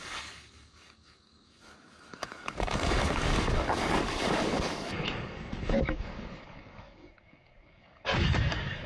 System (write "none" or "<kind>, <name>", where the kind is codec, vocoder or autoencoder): codec, DAC